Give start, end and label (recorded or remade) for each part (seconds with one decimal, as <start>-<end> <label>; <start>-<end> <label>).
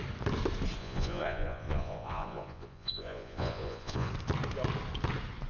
0.0-0.8 recorded; 0.8-4.1 remade; 4.1-5.5 recorded